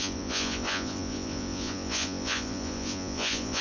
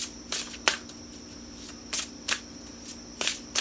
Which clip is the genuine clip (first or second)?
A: second